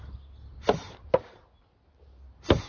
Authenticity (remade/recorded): recorded